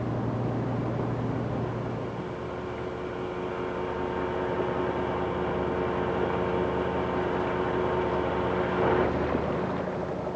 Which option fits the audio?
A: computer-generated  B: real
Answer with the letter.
B